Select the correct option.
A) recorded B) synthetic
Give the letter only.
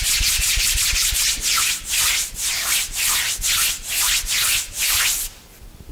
A